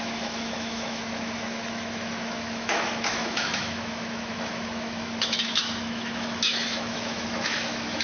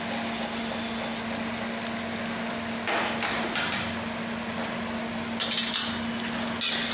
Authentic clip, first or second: second